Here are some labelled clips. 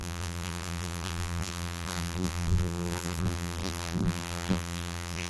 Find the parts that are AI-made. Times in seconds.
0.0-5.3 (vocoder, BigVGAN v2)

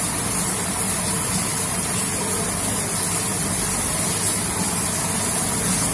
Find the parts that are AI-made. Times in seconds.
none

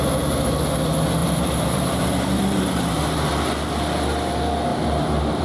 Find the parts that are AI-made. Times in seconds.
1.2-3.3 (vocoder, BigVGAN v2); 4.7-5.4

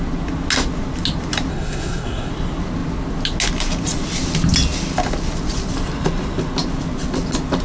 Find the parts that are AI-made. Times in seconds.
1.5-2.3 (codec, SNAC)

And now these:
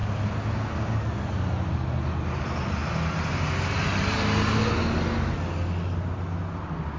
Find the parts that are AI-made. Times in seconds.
none

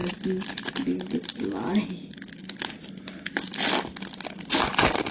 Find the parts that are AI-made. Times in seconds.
none

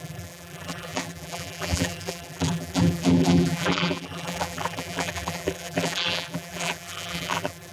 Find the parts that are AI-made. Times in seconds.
0.0-7.7 (vocoder, BigVGAN v2)